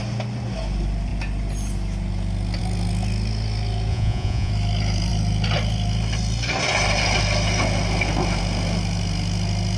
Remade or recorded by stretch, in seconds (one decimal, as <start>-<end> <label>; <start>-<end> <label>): 0.0-3.9 recorded; 3.9-4.5 remade; 4.5-9.8 recorded

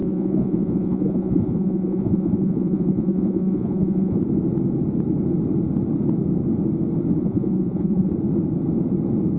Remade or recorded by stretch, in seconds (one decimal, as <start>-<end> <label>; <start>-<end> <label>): 0.0-4.2 remade; 4.2-7.2 recorded; 7.2-8.1 remade; 8.1-9.4 recorded

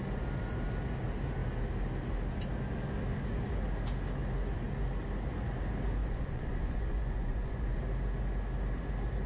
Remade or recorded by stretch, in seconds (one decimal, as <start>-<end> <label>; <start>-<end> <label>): 0.0-6.0 recorded; 6.0-7.8 remade; 7.8-9.3 recorded

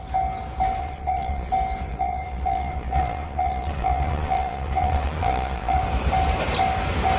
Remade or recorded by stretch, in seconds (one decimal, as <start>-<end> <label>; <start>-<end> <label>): 0.0-0.8 recorded; 0.8-1.5 remade; 1.5-1.9 recorded; 1.9-5.8 remade; 5.8-7.2 recorded

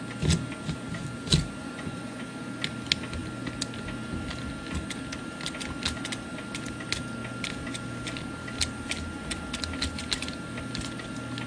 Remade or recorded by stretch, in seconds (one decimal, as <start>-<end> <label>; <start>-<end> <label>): 0.0-1.6 recorded; 1.6-2.2 remade; 2.2-11.5 recorded

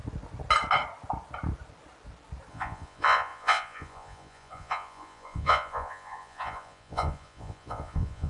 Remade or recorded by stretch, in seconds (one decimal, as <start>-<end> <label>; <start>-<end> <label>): 0.0-2.5 recorded; 2.5-8.3 remade